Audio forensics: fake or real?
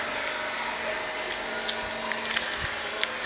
real